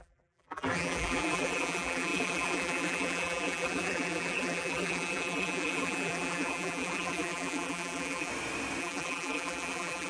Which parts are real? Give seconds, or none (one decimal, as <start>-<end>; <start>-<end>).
8.3-8.8